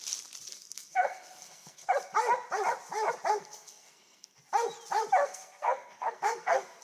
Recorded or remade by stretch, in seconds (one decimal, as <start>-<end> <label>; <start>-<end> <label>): 0.0-0.5 recorded; 0.5-1.9 remade; 1.9-3.3 recorded; 3.3-4.3 remade; 4.3-5.2 recorded; 5.2-6.8 remade